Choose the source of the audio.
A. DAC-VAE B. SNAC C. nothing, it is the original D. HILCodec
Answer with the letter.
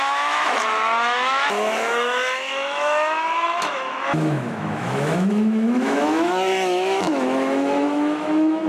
A